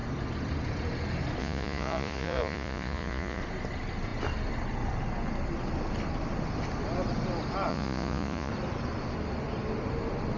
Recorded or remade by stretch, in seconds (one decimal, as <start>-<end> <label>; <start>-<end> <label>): 0.0-1.4 recorded; 1.4-3.4 remade; 3.4-7.7 recorded; 7.7-8.5 remade; 8.5-10.4 recorded